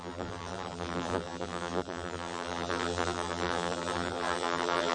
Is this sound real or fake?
fake